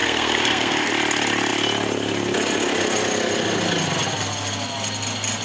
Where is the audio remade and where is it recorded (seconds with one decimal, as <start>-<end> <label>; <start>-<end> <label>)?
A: 0.0-0.9 remade; 0.9-5.4 recorded